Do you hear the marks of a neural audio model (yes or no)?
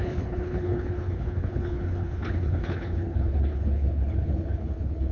yes